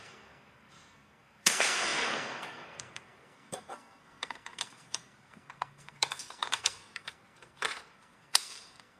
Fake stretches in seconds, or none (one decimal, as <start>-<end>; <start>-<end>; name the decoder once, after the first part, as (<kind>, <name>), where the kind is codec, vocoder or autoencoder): 0.0-9.0 (codec, SNAC)